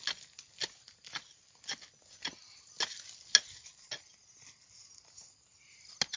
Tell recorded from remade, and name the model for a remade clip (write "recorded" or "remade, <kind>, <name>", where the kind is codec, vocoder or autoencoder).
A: recorded